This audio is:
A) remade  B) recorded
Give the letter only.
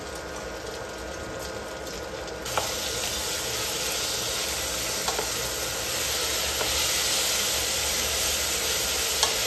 B